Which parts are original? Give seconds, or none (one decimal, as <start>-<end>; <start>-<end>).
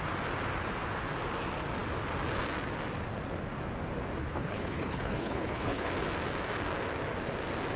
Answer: 0.0-4.2; 5.9-7.8